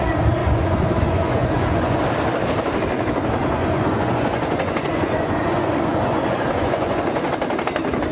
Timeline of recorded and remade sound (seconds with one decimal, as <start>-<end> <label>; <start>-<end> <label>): 0.0-0.4 recorded; 0.4-2.0 remade; 2.0-3.4 recorded; 3.4-7.3 remade; 7.3-8.1 recorded